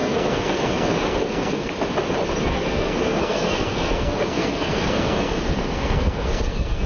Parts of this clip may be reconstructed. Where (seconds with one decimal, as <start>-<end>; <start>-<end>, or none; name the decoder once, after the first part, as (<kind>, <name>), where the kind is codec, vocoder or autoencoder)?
0.0-1.7 (codec, SNAC); 2.5-6.9